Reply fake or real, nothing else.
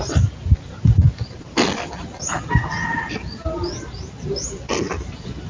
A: real